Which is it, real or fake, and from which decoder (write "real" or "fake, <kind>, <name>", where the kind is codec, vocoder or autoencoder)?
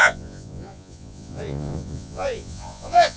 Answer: fake, vocoder, Vocos